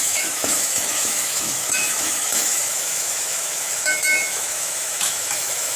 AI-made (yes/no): yes